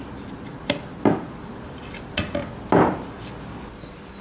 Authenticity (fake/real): real